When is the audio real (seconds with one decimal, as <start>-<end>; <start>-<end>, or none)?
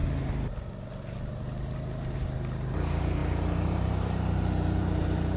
0.0-2.4